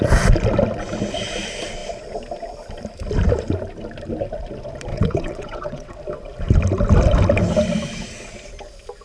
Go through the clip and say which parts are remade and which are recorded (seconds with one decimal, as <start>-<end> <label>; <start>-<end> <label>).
0.0-4.9 recorded; 4.9-6.0 remade; 6.0-9.0 recorded